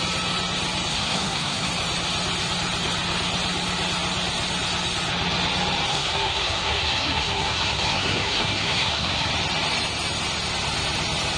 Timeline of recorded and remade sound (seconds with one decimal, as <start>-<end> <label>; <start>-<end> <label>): 0.0-0.9 recorded; 0.9-1.7 remade; 1.7-5.9 recorded; 5.9-9.3 remade; 9.3-11.4 recorded